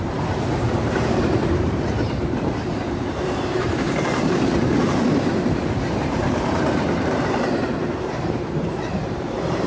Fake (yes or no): yes